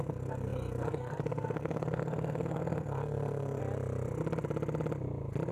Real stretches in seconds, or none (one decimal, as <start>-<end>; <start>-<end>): 3.6-5.5

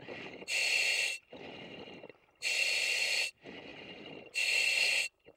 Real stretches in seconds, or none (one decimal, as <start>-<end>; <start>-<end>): 0.0-5.4

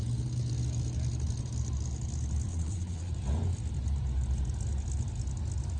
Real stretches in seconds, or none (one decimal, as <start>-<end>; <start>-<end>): 0.0-2.5; 3.1-5.8

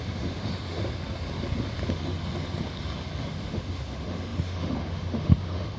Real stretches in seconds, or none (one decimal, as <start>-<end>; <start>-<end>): 0.8-3.3

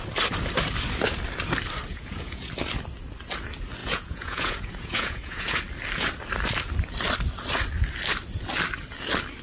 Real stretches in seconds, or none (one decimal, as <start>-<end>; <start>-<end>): 0.0-1.9; 2.5-3.8; 5.6-9.4

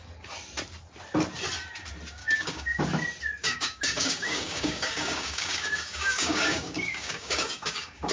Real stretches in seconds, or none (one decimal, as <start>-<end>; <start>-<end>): 0.0-2.2; 2.8-3.4

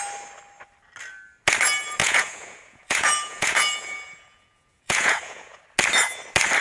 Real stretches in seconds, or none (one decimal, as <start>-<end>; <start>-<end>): 0.0-2.0; 5.6-6.6